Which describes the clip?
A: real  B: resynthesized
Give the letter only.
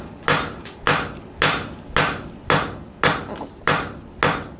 A